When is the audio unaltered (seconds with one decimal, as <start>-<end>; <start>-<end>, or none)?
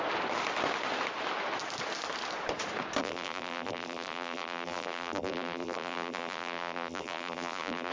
0.0-3.0